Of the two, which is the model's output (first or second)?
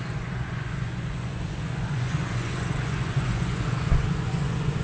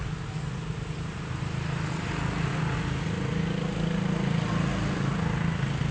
first